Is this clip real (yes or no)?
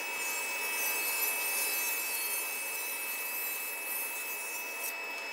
yes